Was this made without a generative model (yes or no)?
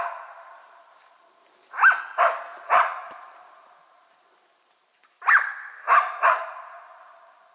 no